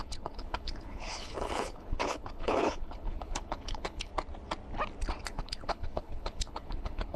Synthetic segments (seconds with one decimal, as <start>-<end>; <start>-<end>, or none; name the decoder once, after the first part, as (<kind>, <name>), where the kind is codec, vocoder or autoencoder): 0.0-4.1 (codec, HILCodec); 5.3-7.2